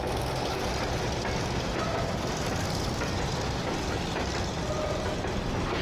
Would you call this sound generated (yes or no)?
no